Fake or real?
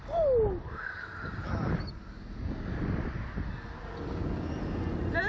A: real